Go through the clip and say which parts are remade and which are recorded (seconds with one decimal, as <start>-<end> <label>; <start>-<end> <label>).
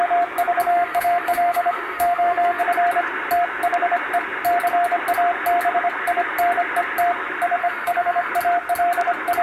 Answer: 0.0-0.7 recorded; 0.7-2.6 remade; 2.6-7.6 recorded; 7.6-8.3 remade; 8.3-9.4 recorded